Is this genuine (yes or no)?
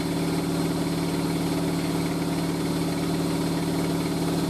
yes